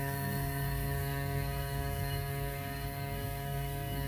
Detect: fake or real fake